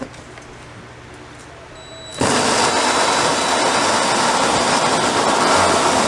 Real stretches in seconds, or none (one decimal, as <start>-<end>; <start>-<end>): 0.0-6.1